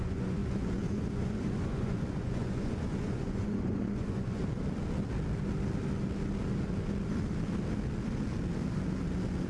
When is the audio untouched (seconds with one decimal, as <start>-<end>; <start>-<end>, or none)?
4.4-9.5